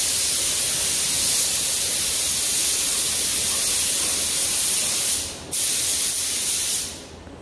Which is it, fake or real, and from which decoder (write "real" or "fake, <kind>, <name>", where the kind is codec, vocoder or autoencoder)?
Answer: real